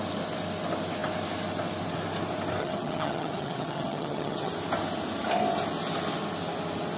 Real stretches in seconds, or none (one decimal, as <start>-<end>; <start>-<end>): 0.0-2.6; 4.5-7.0